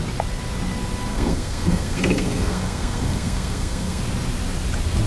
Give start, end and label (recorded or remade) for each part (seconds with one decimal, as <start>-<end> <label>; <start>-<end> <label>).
0.0-1.1 recorded; 1.1-4.0 remade; 4.0-5.1 recorded

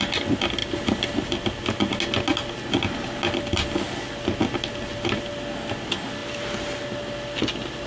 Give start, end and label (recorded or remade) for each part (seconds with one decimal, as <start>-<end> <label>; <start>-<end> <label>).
0.0-7.9 recorded

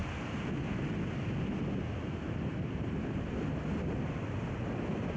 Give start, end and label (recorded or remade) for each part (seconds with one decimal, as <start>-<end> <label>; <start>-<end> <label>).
0.0-5.2 recorded

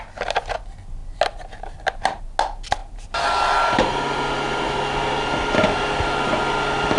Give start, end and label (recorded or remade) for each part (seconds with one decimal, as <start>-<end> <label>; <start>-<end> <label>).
0.0-7.0 recorded

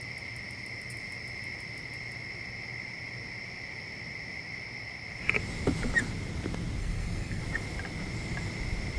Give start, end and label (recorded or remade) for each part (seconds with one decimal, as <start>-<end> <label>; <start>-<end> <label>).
0.0-6.8 recorded; 6.8-7.4 remade; 7.4-9.0 recorded

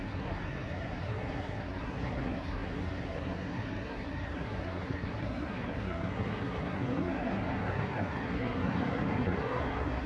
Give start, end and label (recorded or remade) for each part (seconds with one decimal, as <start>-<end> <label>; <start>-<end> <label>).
0.0-10.1 remade

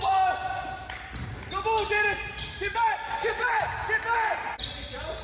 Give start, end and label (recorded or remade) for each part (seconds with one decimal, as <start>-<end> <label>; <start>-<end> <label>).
0.0-5.2 recorded

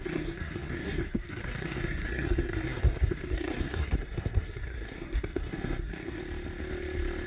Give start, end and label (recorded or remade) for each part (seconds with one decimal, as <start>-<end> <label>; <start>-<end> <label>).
0.0-6.2 remade; 6.2-7.3 recorded